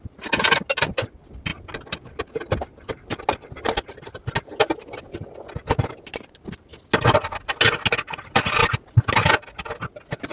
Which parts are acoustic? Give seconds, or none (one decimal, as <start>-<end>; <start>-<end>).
0.0-10.3